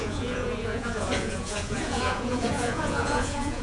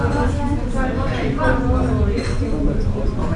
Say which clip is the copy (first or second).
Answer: first